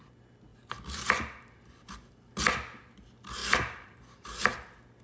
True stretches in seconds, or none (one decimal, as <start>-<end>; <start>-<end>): 0.0-0.5; 2.3-3.4; 4.4-5.0